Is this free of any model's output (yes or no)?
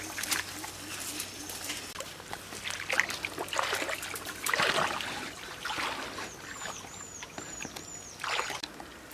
yes